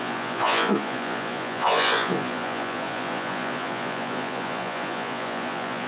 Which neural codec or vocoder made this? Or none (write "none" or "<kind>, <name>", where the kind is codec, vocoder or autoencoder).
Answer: vocoder, Vocos